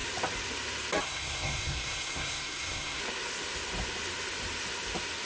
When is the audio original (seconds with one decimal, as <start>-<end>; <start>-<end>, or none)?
0.0-1.0; 3.0-5.3